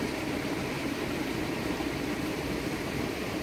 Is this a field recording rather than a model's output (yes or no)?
no